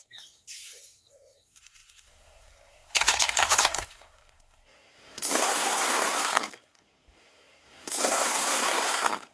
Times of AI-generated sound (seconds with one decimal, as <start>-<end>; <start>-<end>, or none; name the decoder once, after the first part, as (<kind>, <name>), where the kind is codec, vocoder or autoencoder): 0.0-9.3 (codec, SNAC)